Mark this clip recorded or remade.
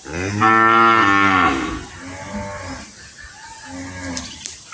recorded